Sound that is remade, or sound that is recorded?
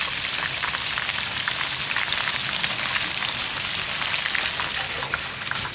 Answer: recorded